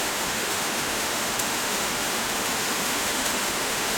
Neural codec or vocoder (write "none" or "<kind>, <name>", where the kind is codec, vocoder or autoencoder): autoencoder, DAC-VAE